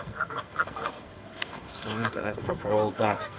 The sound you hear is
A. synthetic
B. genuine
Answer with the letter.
A